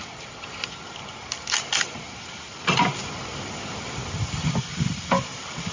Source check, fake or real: real